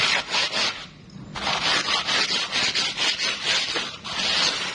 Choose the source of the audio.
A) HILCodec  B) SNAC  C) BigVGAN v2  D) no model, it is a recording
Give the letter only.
D